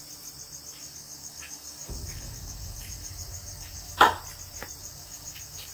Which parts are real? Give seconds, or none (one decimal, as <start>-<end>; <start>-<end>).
0.0-0.8; 4.2-4.8